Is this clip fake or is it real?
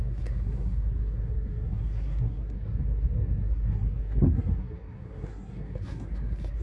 fake